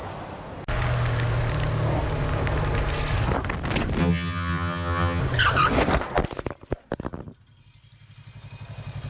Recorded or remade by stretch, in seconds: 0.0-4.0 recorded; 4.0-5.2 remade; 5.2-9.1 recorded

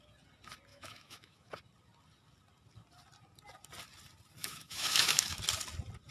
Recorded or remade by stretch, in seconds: 0.0-0.7 recorded; 0.7-1.5 remade; 1.5-4.4 recorded; 4.4-5.4 remade; 5.4-6.1 recorded

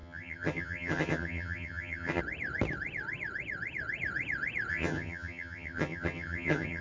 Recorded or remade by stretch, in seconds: 0.0-2.2 remade; 2.2-4.7 recorded; 4.7-6.8 remade

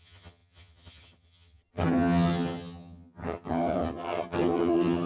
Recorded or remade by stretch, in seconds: 0.0-5.1 remade

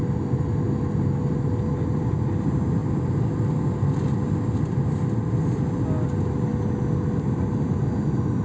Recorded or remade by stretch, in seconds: 0.0-8.4 recorded

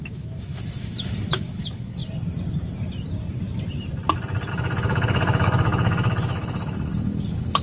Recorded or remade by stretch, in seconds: 0.0-2.0 remade; 2.0-4.5 recorded; 4.5-7.6 remade

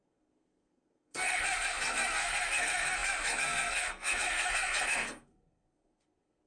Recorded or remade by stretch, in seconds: 0.0-6.5 remade